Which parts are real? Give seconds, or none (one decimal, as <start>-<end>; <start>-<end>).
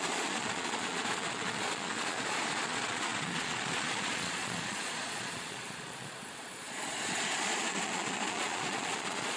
none